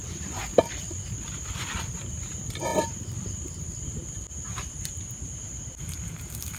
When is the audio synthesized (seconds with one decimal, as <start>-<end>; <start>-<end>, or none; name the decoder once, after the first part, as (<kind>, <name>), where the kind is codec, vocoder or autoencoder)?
2.7-3.9 (vocoder, BigVGAN v2)